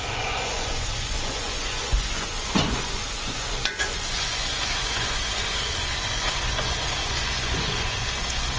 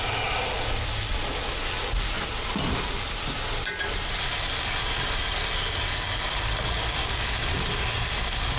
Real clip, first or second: second